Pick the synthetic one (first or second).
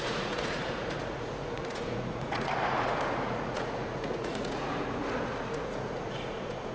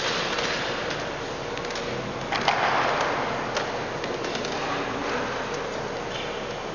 first